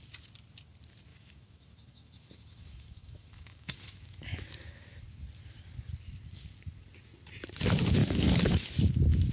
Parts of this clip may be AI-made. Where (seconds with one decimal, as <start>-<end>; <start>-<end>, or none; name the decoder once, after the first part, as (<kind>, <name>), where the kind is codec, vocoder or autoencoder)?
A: 1.1-5.0 (autoencoder, DAC-VAE); 8.0-8.7